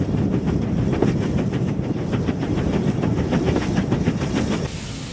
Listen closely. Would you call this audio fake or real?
real